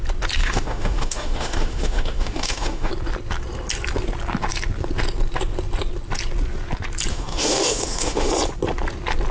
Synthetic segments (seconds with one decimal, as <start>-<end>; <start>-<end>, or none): 0.4-2.9; 7.1-8.3